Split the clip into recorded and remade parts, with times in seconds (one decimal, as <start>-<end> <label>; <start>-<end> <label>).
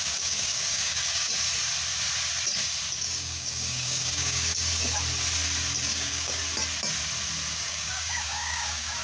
0.0-1.3 remade; 1.3-3.0 recorded; 3.0-4.7 remade; 4.7-5.8 recorded; 5.8-6.4 remade; 6.4-7.5 recorded; 7.5-9.0 remade